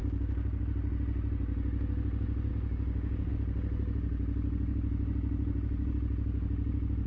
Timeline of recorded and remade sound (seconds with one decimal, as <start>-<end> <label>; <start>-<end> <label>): 0.0-0.6 remade; 0.6-2.5 recorded; 2.5-3.3 remade; 3.3-7.1 recorded